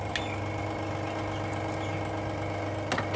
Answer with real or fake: real